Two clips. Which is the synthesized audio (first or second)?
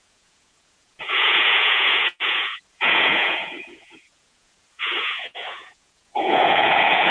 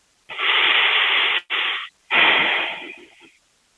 first